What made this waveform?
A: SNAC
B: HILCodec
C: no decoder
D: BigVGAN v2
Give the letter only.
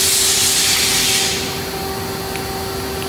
C